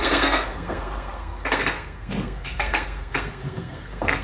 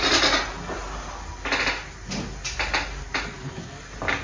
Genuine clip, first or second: second